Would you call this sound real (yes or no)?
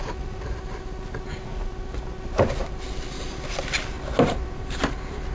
yes